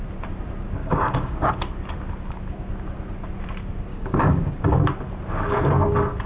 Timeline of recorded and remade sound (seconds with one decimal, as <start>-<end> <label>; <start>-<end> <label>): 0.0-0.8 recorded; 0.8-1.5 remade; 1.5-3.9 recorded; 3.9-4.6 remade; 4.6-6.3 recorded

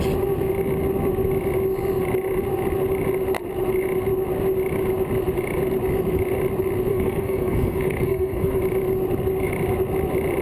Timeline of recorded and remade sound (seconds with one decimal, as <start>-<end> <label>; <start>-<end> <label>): 0.0-6.9 recorded; 6.9-8.6 remade; 8.6-10.4 recorded

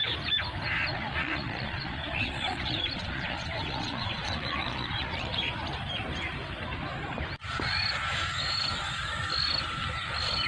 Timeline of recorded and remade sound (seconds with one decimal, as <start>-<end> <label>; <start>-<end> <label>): 0.0-0.9 recorded; 0.9-5.4 remade; 5.4-10.5 recorded